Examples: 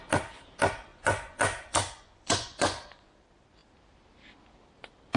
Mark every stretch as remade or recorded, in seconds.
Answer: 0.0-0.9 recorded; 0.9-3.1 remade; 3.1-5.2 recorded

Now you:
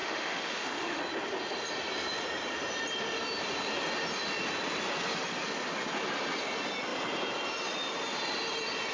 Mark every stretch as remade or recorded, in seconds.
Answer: 0.0-1.0 remade; 1.0-8.9 recorded

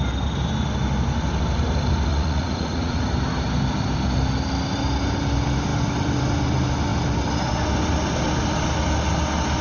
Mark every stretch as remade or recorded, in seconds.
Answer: 0.0-2.1 recorded; 2.1-3.0 remade; 3.0-9.6 recorded

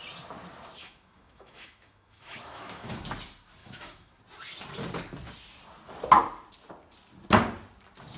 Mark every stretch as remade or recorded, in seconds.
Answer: 0.0-0.8 recorded; 0.8-2.9 remade; 2.9-3.6 recorded; 3.6-4.2 remade; 4.2-8.2 recorded

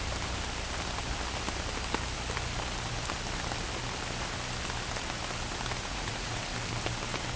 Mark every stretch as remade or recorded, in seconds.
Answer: 0.0-5.9 recorded; 5.9-6.4 remade; 6.4-7.4 recorded

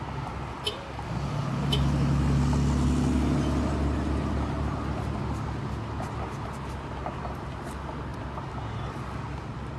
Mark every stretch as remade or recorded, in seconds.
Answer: 0.0-9.8 recorded